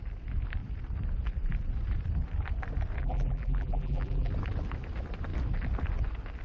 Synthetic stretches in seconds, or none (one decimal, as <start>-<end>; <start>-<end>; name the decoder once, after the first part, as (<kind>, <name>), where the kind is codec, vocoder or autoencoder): 3.0-4.3 (vocoder, BigVGAN v2)